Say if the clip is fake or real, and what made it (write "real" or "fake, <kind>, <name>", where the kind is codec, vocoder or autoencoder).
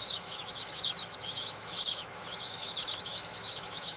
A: fake, autoencoder, DAC-VAE